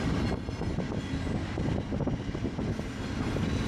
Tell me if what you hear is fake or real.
real